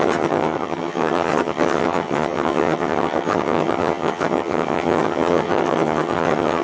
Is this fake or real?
fake